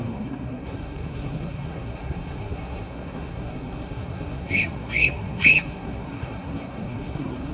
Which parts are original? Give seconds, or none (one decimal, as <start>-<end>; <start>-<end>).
none